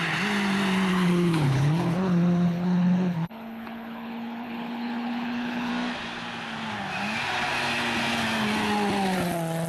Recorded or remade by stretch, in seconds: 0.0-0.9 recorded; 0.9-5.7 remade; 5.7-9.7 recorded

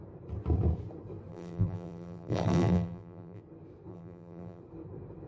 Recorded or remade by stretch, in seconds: 0.0-1.3 recorded; 1.3-3.4 remade; 3.4-3.9 recorded; 3.9-4.6 remade; 4.6-5.3 recorded

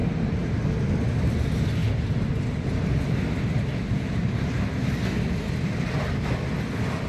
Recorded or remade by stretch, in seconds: 0.0-7.1 recorded

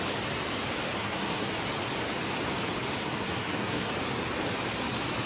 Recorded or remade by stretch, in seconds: 0.0-1.0 recorded; 1.0-1.5 remade; 1.5-3.0 recorded; 3.0-3.9 remade; 3.9-5.3 recorded

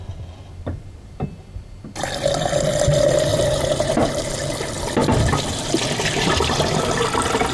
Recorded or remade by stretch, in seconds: 0.0-3.3 recorded; 3.3-4.1 remade; 4.1-7.5 recorded

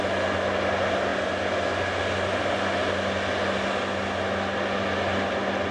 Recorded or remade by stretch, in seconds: 0.0-5.7 recorded